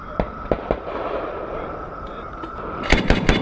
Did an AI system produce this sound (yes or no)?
no